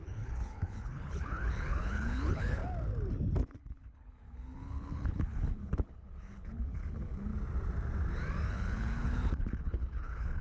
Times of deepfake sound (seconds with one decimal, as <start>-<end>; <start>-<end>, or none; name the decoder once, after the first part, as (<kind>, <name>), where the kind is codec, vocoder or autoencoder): 0.0-2.6 (codec, HILCodec); 3.6-7.3; 8.5-10.4